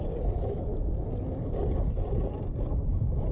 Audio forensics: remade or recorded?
recorded